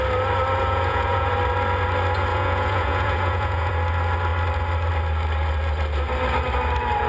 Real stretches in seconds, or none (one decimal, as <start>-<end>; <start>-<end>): 0.0-0.6; 1.3-2.3; 3.7-7.1